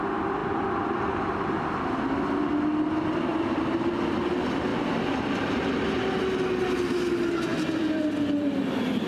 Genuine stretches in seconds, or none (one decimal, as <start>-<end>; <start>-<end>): 0.0-0.4; 1.2-3.3; 3.9-4.7; 6.2-7.5